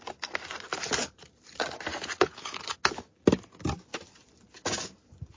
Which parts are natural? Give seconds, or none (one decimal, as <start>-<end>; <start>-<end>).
0.0-1.9; 2.6-5.4